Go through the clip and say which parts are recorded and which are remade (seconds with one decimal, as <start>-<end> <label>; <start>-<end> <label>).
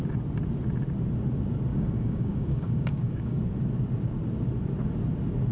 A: 0.0-1.7 recorded; 1.7-3.4 remade; 3.4-5.5 recorded